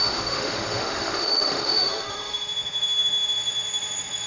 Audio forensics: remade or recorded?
remade